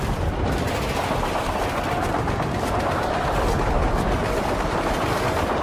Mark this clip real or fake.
real